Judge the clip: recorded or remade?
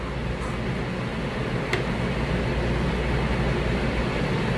recorded